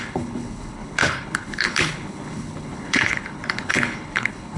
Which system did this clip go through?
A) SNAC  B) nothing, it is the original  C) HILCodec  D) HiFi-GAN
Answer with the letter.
C